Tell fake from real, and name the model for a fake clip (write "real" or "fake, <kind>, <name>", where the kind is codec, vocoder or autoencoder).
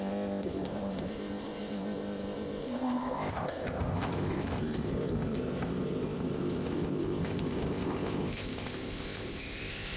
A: fake, codec, ZipCodec